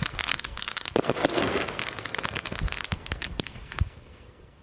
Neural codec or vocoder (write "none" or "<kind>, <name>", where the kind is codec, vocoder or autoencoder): codec, SNAC